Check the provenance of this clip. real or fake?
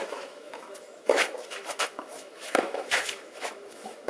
fake